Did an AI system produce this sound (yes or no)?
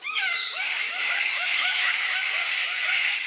yes